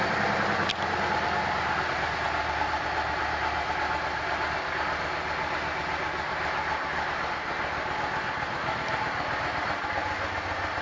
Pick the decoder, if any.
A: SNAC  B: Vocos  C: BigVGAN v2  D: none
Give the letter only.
D